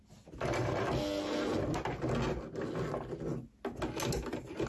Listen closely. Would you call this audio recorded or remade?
recorded